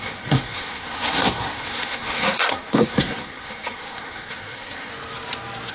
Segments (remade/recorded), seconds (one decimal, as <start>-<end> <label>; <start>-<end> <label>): 0.0-4.9 remade; 4.9-5.7 recorded